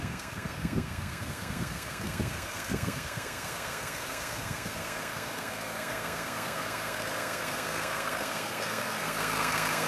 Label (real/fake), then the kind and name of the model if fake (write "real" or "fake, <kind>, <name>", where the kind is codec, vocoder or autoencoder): fake, codec, SNAC